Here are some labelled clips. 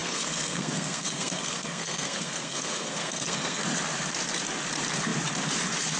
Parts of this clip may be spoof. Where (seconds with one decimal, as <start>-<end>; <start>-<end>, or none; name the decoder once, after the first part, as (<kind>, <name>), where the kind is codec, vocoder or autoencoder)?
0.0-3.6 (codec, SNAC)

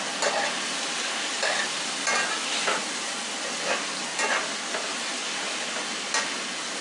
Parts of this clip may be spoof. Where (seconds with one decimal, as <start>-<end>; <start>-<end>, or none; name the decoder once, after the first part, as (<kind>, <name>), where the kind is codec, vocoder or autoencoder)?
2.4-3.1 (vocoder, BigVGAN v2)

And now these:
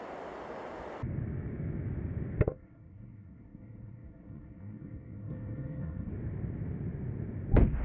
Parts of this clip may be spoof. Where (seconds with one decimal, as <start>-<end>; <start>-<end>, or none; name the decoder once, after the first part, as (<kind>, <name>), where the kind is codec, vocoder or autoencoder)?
2.5-6.1 (codec, SNAC)